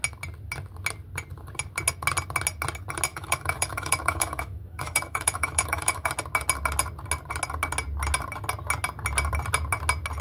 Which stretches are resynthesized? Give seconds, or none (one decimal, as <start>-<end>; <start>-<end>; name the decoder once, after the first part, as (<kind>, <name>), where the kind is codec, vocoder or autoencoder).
3.1-6.1 (autoencoder, DAC-VAE)